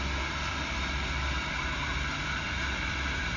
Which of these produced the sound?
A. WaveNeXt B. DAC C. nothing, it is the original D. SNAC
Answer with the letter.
C